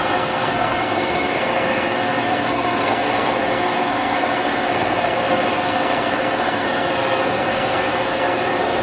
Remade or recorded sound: remade